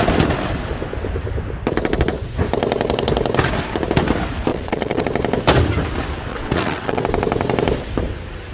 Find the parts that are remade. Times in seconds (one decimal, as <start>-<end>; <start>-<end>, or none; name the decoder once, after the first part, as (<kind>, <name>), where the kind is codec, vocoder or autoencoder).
4.5-5.0 (vocoder, WaveNeXt); 6.3-7.0

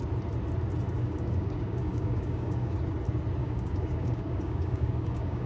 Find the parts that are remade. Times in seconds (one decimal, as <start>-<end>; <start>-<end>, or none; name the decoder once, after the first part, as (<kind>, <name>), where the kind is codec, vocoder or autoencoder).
1.0-2.8 (codec, DAC); 3.4-5.5

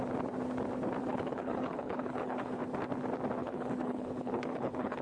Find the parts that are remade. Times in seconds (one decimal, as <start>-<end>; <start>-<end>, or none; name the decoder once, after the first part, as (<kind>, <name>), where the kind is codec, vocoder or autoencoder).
1.0-2.6 (codec, HILCodec); 3.4-5.0